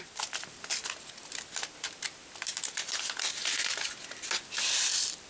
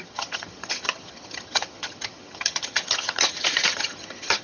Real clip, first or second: first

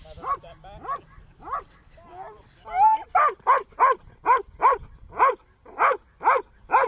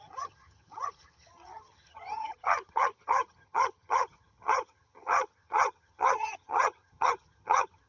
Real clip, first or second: first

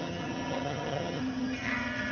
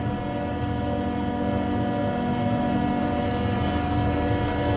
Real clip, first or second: second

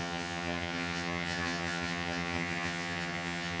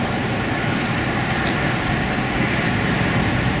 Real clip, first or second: second